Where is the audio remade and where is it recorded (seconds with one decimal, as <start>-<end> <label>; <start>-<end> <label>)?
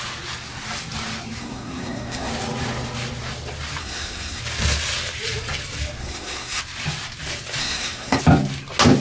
0.0-1.4 recorded; 1.4-2.3 remade; 2.3-3.8 recorded; 3.8-4.4 remade; 4.4-6.0 recorded; 6.0-6.6 remade; 6.6-7.6 recorded; 7.6-8.2 remade; 8.2-9.0 recorded